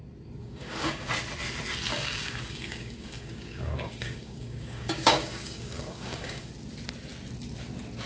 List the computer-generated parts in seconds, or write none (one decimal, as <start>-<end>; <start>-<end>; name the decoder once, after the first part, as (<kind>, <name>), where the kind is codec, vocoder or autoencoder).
0.4-1.1 (codec, DAC); 1.9-6.5